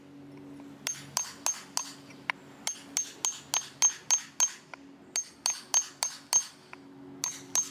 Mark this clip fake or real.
real